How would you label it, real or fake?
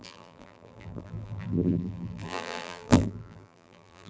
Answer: fake